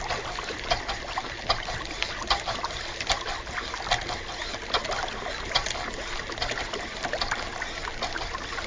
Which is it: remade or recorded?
recorded